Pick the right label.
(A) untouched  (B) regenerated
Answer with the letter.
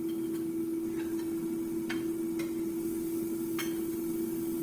A